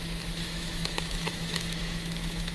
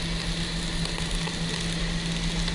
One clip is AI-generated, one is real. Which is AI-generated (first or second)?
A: first